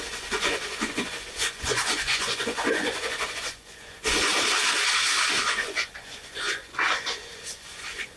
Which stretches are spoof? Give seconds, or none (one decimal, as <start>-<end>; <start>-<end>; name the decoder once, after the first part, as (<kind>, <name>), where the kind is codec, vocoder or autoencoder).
0.0-4.3 (vocoder, Vocos); 5.4-8.2